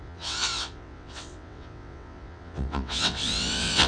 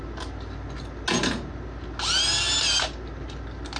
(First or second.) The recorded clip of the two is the second